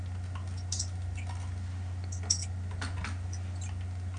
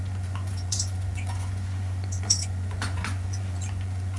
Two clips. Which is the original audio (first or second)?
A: first